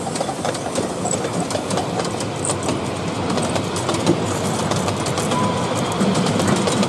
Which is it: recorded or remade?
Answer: recorded